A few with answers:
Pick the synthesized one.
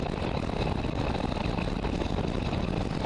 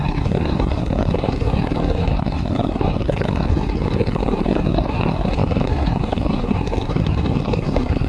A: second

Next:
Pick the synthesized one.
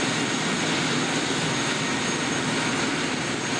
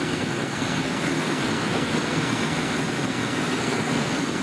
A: second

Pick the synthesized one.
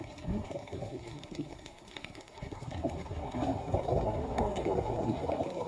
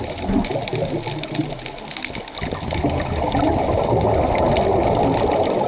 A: first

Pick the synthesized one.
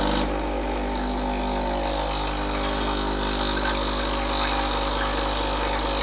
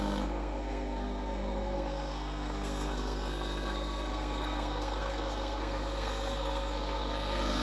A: second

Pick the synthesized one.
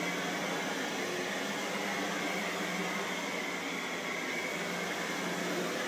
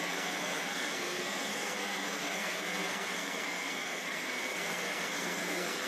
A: second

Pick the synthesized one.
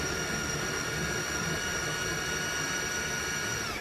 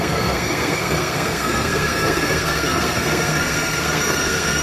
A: second